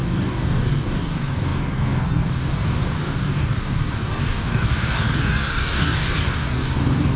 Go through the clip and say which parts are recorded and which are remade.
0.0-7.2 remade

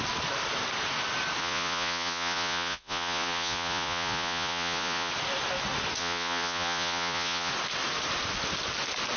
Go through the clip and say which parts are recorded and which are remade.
0.0-1.4 recorded; 1.4-5.1 remade; 5.1-6.0 recorded; 6.0-7.5 remade; 7.5-9.2 recorded

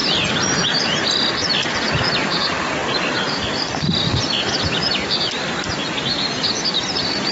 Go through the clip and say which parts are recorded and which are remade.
0.0-7.3 recorded

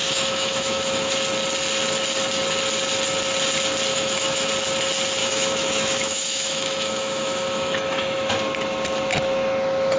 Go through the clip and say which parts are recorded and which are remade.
0.0-1.1 remade; 1.1-3.9 recorded; 3.9-4.5 remade; 4.5-5.2 recorded; 5.2-8.3 remade; 8.3-10.0 recorded